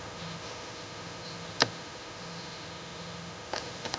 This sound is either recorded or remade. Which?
remade